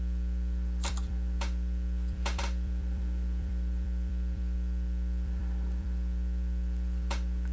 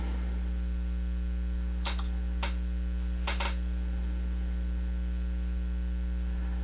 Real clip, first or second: second